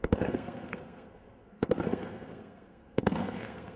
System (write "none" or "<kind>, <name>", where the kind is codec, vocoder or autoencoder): codec, SNAC